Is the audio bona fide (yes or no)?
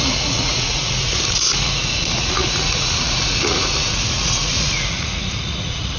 no